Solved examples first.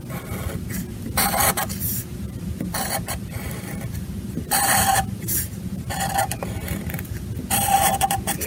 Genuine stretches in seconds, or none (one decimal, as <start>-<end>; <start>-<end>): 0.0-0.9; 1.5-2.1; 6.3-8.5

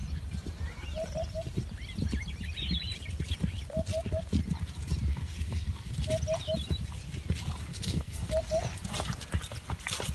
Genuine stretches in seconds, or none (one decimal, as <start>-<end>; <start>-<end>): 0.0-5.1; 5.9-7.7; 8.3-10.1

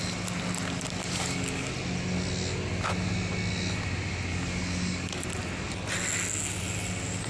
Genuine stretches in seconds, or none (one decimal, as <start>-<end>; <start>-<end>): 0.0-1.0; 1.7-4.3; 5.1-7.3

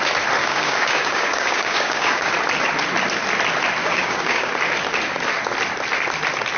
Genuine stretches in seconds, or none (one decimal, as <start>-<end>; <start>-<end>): 0.0-0.4; 2.3-3.8; 4.5-6.6